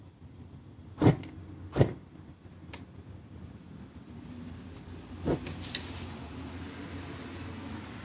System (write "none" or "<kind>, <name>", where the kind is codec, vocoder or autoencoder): none